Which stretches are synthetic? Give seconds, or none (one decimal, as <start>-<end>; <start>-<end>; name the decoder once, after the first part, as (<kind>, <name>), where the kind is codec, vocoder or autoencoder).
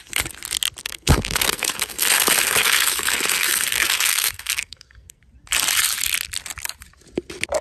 0.8-5.2 (codec, SNAC)